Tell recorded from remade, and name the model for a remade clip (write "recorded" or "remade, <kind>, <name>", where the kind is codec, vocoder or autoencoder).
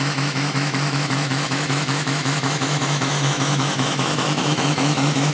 remade, autoencoder, DAC-VAE